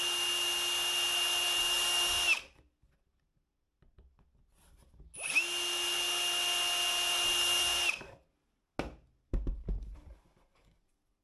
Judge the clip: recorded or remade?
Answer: recorded